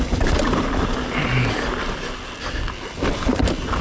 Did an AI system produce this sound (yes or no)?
no